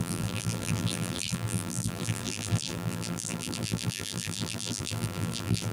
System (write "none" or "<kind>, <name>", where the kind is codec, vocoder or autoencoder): vocoder, BigVGAN v2